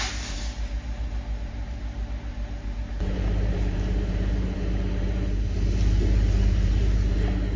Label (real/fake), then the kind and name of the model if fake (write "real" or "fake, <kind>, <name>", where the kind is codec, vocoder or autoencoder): fake, vocoder, BigVGAN v2